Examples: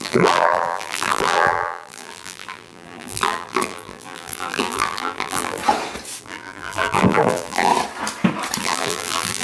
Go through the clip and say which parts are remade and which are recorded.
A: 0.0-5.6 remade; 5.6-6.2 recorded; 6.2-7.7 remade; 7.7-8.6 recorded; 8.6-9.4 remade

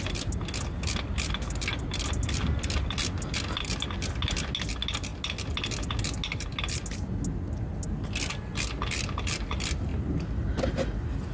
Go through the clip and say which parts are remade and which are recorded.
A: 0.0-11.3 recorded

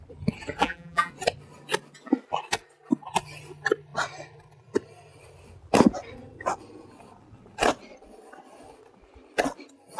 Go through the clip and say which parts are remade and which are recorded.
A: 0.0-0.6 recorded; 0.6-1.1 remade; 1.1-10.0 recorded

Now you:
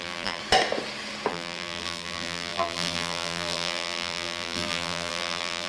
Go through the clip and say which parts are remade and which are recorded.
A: 0.0-0.4 remade; 0.4-1.3 recorded; 1.3-5.7 remade

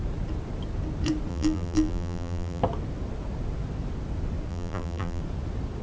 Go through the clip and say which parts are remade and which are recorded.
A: 0.0-1.3 recorded; 1.3-2.6 remade; 2.6-4.5 recorded; 4.5-5.2 remade; 5.2-5.8 recorded

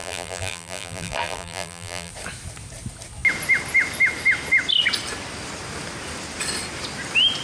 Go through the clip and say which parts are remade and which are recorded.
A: 0.0-2.1 remade; 2.1-7.4 recorded